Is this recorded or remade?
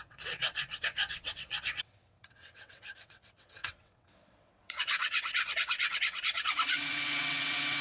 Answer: remade